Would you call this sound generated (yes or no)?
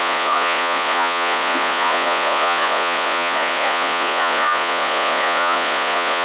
yes